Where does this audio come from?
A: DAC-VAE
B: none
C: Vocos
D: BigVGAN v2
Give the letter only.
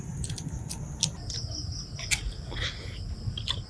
B